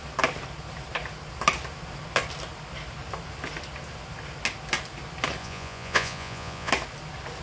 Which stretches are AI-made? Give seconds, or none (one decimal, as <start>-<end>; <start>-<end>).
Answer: 5.4-6.7